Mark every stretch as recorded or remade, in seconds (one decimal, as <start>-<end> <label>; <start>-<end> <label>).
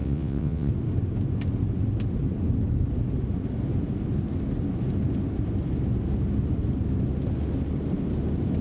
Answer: 0.0-0.7 remade; 0.7-8.6 recorded